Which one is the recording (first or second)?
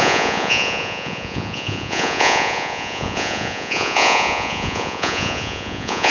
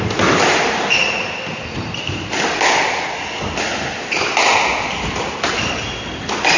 second